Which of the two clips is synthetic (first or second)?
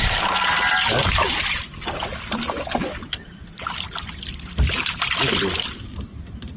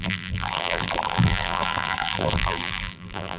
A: second